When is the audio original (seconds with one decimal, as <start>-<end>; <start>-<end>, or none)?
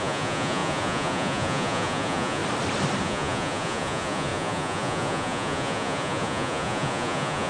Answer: 2.4-3.0